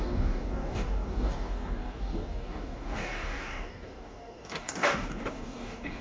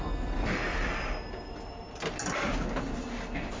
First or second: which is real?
second